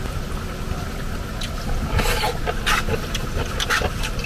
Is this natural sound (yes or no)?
yes